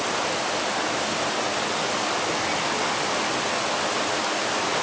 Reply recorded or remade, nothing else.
recorded